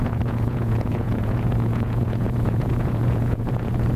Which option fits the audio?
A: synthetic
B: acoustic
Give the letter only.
A